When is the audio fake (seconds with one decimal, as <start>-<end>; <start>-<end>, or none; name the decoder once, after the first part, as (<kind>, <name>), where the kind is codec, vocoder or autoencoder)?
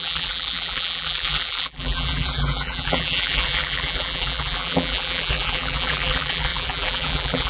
0.0-7.5 (vocoder, BigVGAN v2)